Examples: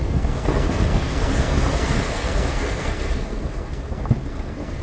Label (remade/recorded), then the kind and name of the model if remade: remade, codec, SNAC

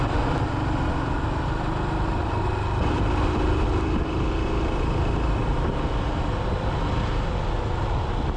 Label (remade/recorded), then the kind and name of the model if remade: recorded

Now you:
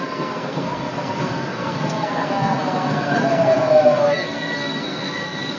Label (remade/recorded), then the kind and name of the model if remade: remade, codec, SNAC